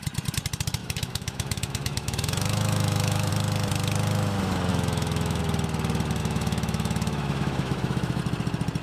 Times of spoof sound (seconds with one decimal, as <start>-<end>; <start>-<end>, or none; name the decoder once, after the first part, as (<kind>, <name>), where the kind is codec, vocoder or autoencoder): 0.8-3.3 (autoencoder, DAC-VAE); 4.7-5.4; 6.2-8.2

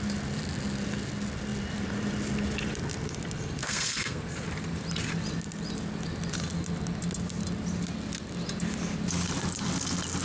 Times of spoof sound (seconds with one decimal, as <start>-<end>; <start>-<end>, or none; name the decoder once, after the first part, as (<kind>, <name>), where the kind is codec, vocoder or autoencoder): 3.6-4.2 (codec, SNAC)

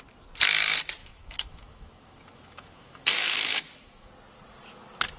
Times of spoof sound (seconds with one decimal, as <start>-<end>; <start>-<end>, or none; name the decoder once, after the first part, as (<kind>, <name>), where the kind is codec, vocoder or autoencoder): 1.0-4.1 (autoencoder, DAC-VAE)

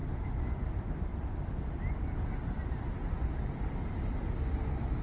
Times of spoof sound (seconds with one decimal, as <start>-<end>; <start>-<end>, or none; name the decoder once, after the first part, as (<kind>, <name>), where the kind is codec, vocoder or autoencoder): none

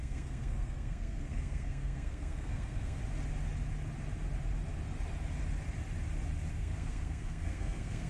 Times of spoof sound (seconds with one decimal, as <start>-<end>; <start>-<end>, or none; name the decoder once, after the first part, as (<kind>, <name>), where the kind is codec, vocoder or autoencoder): 0.0-3.0 (codec, SNAC); 6.5-8.1